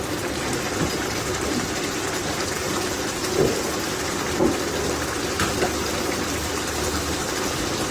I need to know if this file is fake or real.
real